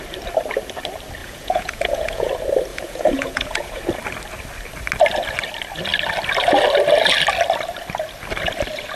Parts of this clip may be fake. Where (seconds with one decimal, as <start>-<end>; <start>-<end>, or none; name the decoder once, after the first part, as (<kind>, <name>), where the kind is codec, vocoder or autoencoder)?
1.2-2.3 (vocoder, Vocos); 2.7-3.8